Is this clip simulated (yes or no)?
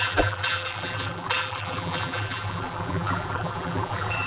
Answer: yes